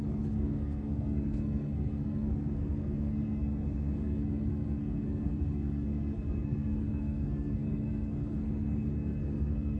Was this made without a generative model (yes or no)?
no